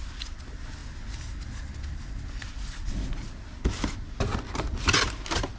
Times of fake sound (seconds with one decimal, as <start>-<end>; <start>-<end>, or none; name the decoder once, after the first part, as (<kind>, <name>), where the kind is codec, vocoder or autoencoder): none